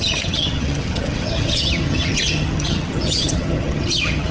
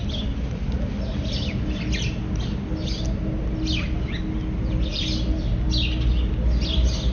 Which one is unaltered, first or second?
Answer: second